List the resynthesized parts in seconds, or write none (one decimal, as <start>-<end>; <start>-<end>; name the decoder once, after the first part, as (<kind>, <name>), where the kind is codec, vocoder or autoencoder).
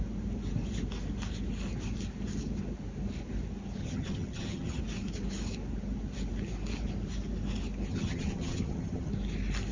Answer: 3.8-4.8 (vocoder, HiFi-GAN); 7.9-9.1